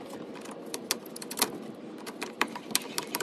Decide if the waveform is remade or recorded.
recorded